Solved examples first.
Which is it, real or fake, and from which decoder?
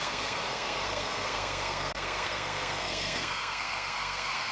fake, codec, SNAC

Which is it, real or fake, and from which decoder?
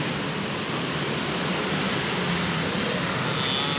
real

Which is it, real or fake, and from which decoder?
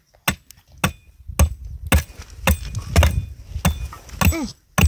real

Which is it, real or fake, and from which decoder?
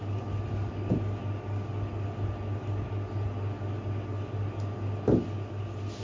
real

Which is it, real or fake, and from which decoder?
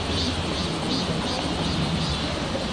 real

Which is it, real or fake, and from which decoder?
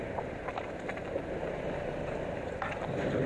fake, vocoder, BigVGAN v2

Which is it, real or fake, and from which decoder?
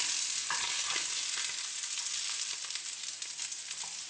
real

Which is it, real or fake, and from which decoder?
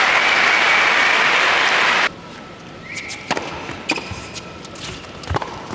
real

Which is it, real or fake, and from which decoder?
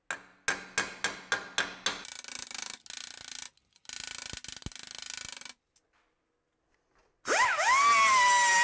real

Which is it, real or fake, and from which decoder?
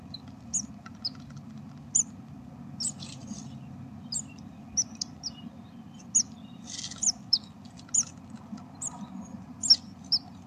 real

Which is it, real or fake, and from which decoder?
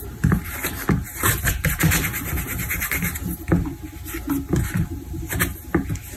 real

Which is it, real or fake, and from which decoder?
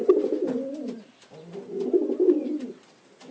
real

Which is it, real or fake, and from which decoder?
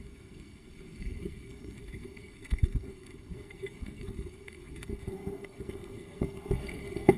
fake, codec, SNAC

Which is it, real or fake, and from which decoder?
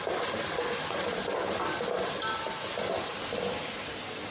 real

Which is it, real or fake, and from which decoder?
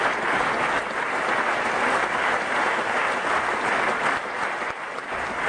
real